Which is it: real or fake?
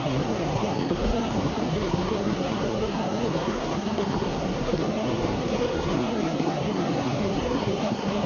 fake